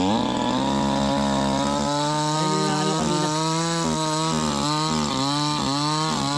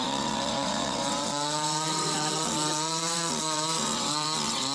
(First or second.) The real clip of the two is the first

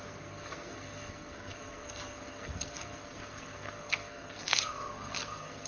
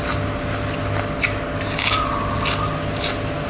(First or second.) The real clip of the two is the second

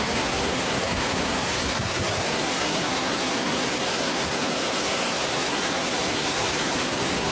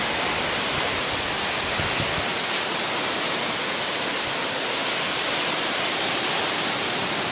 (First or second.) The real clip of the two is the second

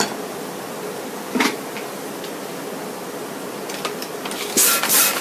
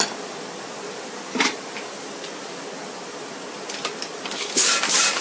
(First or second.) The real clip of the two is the first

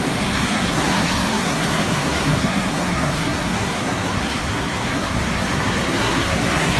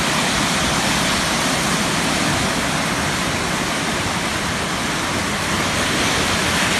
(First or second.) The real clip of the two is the second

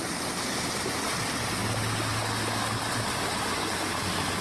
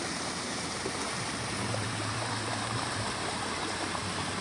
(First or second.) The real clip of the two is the first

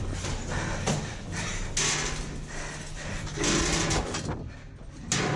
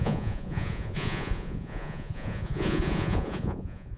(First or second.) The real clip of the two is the first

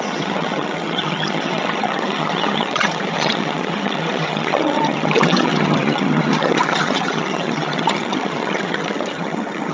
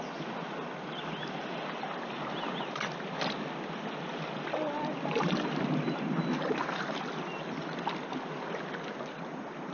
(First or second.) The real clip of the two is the second